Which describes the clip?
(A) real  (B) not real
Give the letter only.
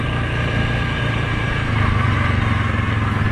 A